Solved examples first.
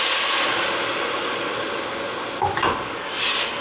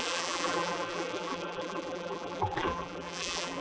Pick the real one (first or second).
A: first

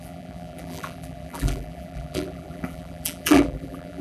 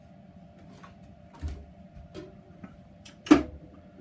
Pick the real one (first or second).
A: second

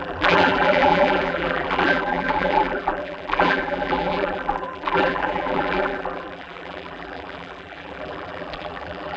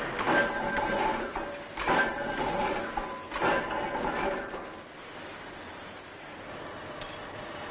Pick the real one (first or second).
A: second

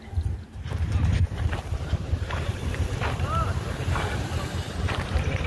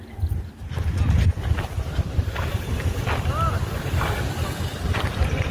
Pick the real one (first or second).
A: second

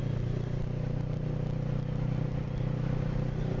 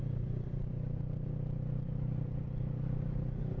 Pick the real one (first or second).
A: first